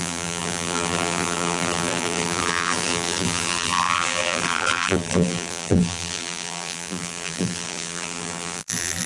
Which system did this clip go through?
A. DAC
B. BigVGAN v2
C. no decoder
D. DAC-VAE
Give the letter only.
B